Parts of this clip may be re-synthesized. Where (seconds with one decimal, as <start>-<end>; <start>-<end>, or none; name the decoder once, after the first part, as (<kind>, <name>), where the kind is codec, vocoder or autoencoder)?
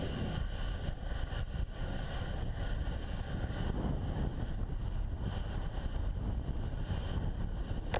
none